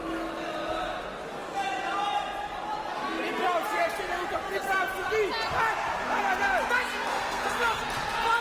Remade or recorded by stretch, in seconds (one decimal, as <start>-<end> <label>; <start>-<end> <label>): 0.0-7.1 recorded; 7.1-7.8 remade; 7.8-8.4 recorded